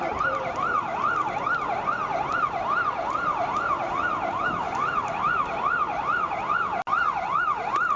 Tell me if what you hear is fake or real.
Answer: real